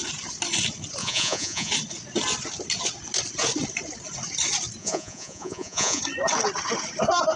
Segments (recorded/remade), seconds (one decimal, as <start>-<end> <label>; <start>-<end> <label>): 0.0-1.0 recorded; 1.0-1.7 remade; 1.7-4.8 recorded; 4.8-6.0 remade; 6.0-7.4 recorded